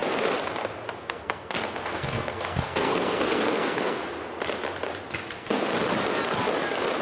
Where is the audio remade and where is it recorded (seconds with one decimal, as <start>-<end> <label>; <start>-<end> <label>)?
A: 0.0-1.0 recorded; 1.0-4.0 remade; 4.0-5.3 recorded; 5.3-5.7 remade; 5.7-7.0 recorded